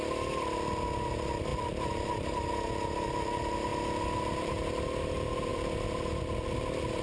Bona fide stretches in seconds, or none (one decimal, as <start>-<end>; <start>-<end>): 0.0-1.5; 2.7-3.7; 4.5-5.5; 6.6-7.0